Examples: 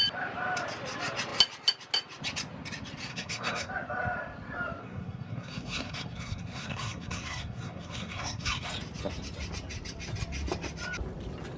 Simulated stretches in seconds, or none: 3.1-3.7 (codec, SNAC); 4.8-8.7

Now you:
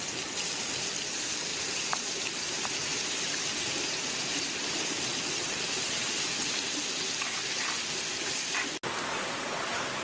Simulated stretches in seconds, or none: 1.5-2.4 (vocoder, BigVGAN v2); 2.8-5.0

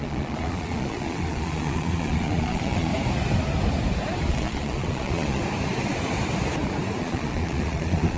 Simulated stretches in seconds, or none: 0.0-2.9 (vocoder, Vocos); 4.3-5.4; 7.0-8.2

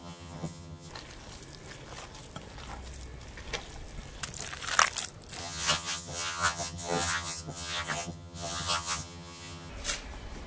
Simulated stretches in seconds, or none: 0.0-0.9 (vocoder, HiFi-GAN); 5.4-9.7

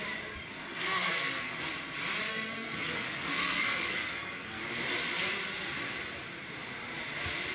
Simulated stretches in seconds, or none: 0.6-1.5 (codec, SNAC); 2.3-4.6